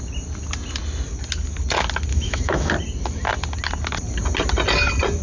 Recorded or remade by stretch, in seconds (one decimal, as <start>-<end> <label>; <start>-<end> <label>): 0.0-2.1 recorded; 2.1-2.7 remade; 2.7-5.2 recorded